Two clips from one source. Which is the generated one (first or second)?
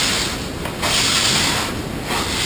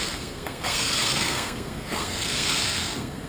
second